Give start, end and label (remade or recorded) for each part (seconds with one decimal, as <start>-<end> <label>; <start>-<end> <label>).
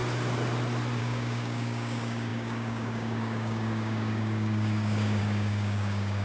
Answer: 0.0-1.0 recorded; 1.0-6.2 remade